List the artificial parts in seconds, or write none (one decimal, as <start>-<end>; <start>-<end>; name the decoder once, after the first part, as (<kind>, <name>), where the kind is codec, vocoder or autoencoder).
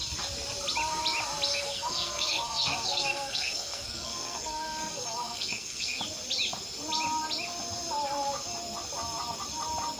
1.5-6.0 (codec, SNAC)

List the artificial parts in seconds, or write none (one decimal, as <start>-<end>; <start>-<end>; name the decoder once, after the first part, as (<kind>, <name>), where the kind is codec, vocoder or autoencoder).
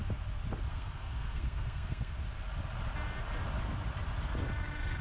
0.7-2.2 (codec, SNAC)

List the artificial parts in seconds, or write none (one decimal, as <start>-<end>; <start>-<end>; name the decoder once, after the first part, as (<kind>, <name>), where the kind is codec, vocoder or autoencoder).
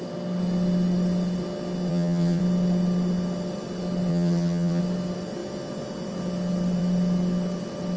1.9-2.4 (vocoder, HiFi-GAN); 4.1-4.8